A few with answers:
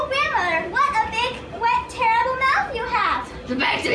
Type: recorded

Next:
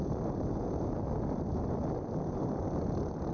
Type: recorded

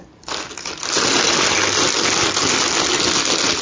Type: recorded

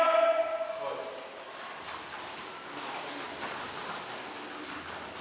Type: recorded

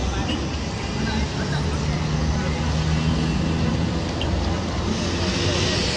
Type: recorded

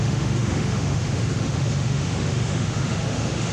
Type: remade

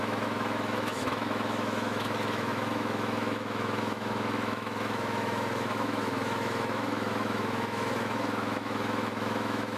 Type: remade